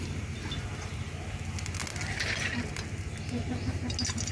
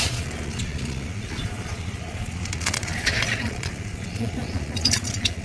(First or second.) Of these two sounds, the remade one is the second